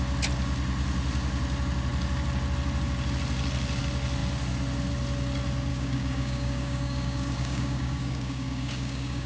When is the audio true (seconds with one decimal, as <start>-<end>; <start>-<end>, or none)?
0.0-5.7